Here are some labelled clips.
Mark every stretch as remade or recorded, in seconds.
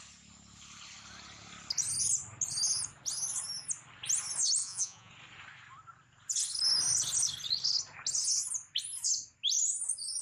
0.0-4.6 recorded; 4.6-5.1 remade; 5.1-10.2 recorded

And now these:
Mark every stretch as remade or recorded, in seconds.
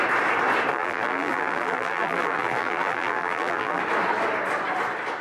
0.0-0.7 recorded; 0.7-3.8 remade; 3.8-5.2 recorded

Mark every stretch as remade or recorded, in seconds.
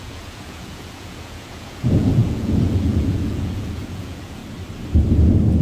0.0-4.4 remade; 4.4-5.6 recorded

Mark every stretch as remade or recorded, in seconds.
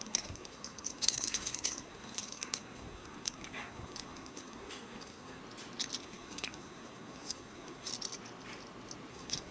0.0-5.4 remade; 5.4-6.0 recorded; 6.0-7.9 remade; 7.9-9.1 recorded; 9.1-9.5 remade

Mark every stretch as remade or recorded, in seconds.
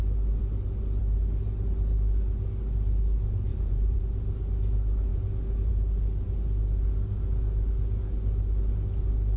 0.0-3.5 recorded; 3.5-4.0 remade; 4.0-9.4 recorded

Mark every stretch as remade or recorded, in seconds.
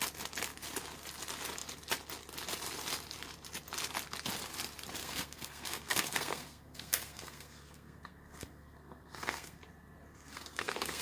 0.0-5.0 recorded; 5.0-9.6 remade; 9.6-10.1 recorded; 10.1-11.0 remade